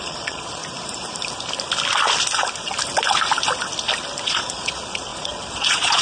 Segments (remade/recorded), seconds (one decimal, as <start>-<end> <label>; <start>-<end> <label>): 0.0-0.6 remade; 0.6-4.2 recorded; 4.2-6.0 remade